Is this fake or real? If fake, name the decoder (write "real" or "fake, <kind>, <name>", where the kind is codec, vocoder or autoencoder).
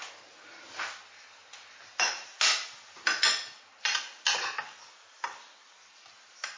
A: real